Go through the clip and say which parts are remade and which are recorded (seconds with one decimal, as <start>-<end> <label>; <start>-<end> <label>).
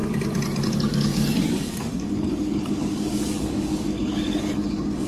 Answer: 0.0-0.7 recorded; 0.7-5.1 remade